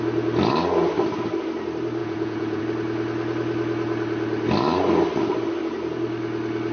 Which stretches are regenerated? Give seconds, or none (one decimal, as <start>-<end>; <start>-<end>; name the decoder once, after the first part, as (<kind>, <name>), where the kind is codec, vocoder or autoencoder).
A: 2.0-2.6 (vocoder, Vocos)